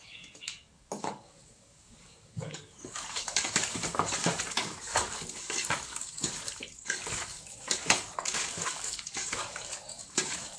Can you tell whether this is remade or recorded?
remade